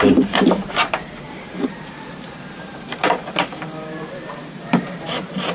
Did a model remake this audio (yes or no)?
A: yes